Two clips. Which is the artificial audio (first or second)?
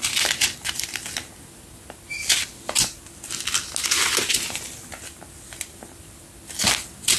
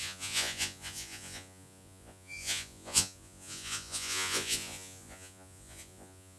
second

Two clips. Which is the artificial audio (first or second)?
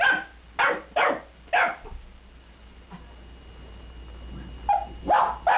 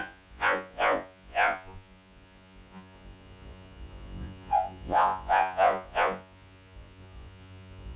second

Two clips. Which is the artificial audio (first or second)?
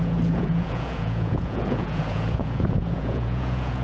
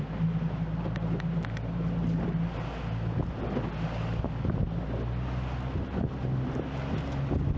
first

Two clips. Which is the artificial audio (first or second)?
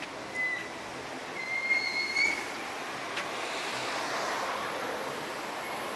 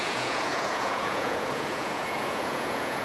second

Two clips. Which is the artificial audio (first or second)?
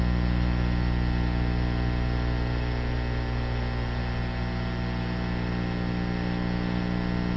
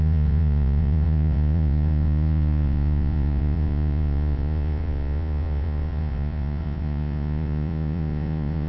second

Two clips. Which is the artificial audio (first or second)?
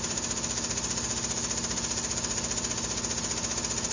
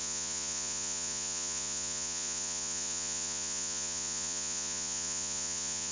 second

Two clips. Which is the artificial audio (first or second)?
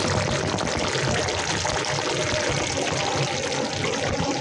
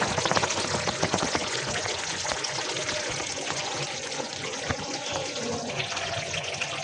second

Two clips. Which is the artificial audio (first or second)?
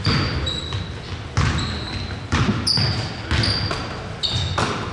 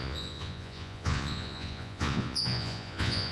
second